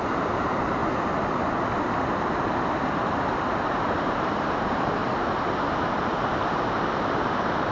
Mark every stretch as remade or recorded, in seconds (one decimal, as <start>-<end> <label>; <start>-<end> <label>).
0.0-0.8 remade; 0.8-2.9 recorded; 2.9-5.0 remade; 5.0-6.7 recorded; 6.7-7.7 remade

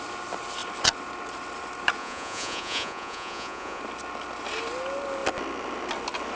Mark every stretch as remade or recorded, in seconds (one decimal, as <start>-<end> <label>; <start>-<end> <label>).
0.0-2.0 recorded; 2.0-3.8 remade; 3.8-6.4 recorded

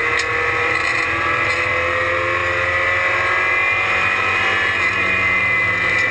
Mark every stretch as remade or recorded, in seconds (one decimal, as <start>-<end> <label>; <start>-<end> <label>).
0.0-6.1 recorded

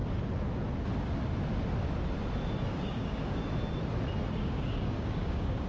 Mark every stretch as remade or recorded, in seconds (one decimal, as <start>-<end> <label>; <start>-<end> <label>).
0.0-2.7 recorded; 2.7-3.4 remade; 3.4-4.3 recorded; 4.3-5.7 remade

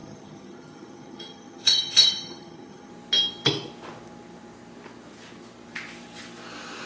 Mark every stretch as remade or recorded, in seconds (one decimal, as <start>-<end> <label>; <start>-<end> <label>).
0.0-2.9 remade; 2.9-6.9 recorded

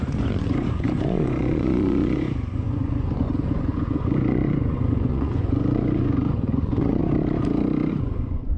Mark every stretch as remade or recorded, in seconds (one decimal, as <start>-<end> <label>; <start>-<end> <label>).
0.0-7.0 remade; 7.0-7.9 recorded; 7.9-8.6 remade

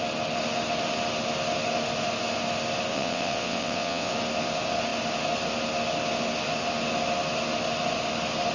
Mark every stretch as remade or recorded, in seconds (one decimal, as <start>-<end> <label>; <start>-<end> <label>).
0.0-2.9 recorded; 2.9-4.1 remade; 4.1-8.5 recorded

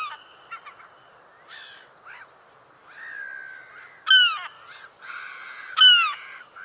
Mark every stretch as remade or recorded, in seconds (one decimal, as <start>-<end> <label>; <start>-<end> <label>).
0.0-6.6 recorded